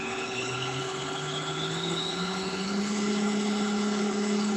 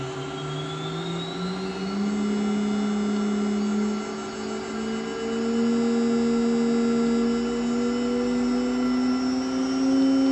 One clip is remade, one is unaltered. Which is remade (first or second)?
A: first